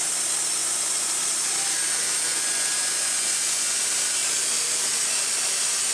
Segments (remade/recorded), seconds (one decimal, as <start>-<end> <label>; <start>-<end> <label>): 0.0-0.6 recorded; 0.6-1.1 remade; 1.1-2.3 recorded; 2.3-3.8 remade; 3.8-5.9 recorded